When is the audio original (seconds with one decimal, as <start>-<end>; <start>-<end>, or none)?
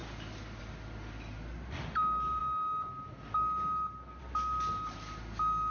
0.0-5.7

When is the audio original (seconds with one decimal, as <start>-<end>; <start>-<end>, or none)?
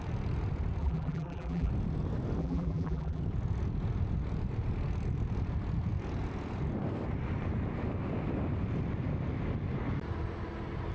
0.0-0.8; 1.7-2.4; 3.2-10.9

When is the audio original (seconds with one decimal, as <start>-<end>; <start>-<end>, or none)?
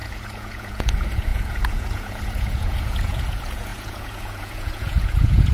none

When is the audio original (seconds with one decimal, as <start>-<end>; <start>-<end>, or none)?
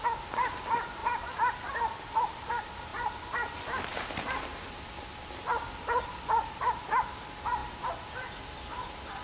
0.0-1.0; 1.7-2.9; 6.5-9.2